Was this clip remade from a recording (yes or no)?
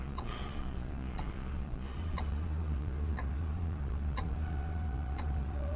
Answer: yes